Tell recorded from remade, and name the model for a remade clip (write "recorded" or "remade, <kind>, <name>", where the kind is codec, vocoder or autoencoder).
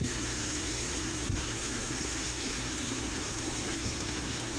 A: remade, codec, SNAC